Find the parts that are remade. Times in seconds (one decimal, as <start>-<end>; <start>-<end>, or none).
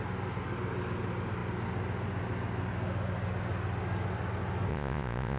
4.7-5.4